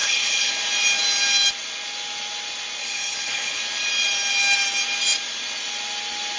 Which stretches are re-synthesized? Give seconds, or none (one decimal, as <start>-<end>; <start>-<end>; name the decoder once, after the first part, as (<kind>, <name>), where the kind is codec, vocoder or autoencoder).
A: 0.0-0.5 (codec, HILCodec); 2.8-3.6